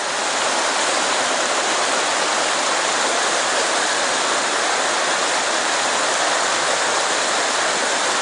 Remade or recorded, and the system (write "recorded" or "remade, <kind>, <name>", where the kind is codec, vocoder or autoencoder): recorded